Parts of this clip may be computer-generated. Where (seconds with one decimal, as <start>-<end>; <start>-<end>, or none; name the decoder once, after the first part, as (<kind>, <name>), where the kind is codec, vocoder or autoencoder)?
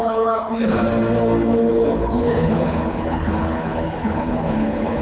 0.0-0.8 (codec, HILCodec); 1.7-5.0